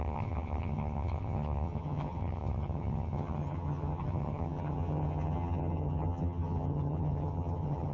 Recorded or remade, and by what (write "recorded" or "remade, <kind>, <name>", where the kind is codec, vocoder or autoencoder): remade, vocoder, HiFi-GAN